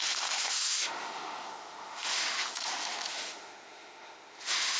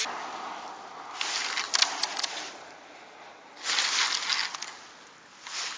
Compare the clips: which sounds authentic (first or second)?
second